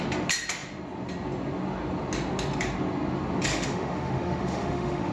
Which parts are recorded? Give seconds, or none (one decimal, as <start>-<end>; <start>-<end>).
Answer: 0.0-3.5